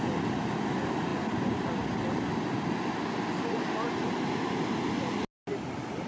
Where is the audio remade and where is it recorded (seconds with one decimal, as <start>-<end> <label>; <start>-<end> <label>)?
0.0-6.1 recorded

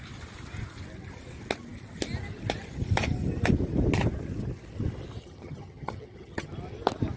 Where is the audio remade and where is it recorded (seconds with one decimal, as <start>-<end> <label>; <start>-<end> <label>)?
0.0-5.2 recorded; 5.2-6.5 remade; 6.5-7.2 recorded

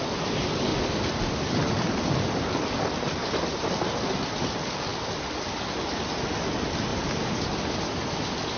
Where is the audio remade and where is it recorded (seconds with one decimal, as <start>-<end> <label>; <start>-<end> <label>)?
0.0-0.7 recorded; 0.7-1.5 remade; 1.5-6.9 recorded; 6.9-8.0 remade; 8.0-8.6 recorded

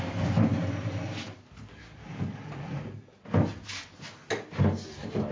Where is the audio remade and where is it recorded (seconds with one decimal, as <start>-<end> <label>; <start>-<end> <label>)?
0.0-5.3 recorded

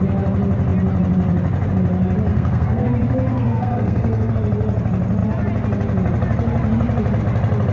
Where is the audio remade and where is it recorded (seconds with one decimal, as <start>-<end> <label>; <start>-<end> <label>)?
0.0-2.3 recorded; 2.3-2.9 remade; 2.9-3.3 recorded; 3.3-4.3 remade; 4.3-7.7 recorded

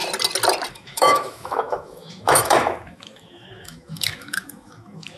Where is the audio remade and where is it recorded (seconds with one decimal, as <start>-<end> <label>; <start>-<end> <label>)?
0.0-0.7 recorded; 0.7-5.2 remade

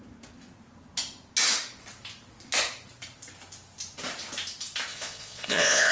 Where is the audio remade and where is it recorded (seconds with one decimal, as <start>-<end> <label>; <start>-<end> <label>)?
0.0-4.9 recorded; 4.9-5.9 remade

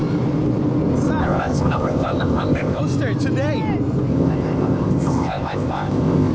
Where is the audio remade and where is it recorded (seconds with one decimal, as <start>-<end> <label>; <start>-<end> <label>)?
0.0-1.2 recorded; 1.2-2.8 remade; 2.8-4.1 recorded; 4.1-6.3 remade